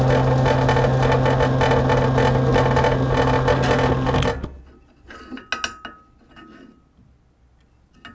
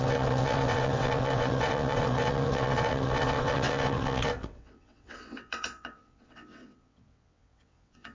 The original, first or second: first